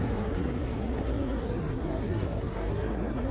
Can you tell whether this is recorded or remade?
remade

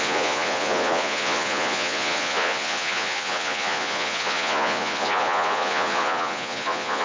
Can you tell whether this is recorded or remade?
remade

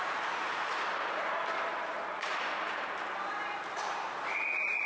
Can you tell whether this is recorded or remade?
remade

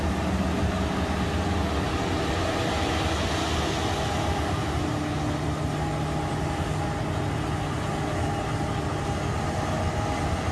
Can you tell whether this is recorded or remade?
recorded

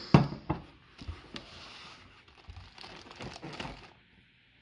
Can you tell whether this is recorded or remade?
recorded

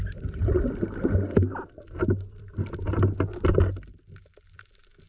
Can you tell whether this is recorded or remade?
recorded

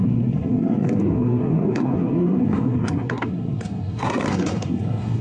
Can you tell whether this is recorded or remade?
remade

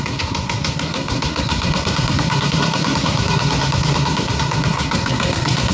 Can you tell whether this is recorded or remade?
remade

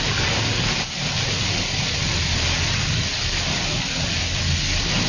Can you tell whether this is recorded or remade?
recorded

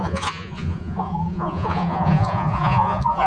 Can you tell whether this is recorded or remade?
remade